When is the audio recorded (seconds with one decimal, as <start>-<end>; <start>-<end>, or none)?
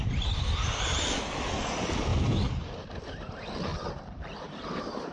0.0-2.1; 2.7-3.7